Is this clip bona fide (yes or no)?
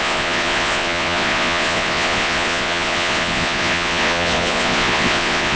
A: no